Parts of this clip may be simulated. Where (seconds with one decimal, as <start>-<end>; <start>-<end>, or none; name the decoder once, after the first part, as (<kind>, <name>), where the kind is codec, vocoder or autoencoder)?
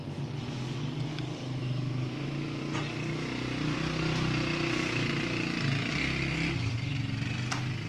1.6-2.6 (autoencoder, DAC-VAE)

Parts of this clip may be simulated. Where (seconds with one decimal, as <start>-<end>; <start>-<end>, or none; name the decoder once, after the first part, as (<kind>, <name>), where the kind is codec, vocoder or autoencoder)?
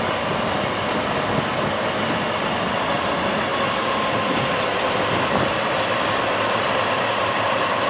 none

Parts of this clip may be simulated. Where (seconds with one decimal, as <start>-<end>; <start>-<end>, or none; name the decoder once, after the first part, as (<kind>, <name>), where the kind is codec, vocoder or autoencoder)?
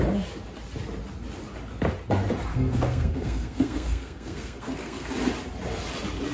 2.5-5.1 (codec, SNAC)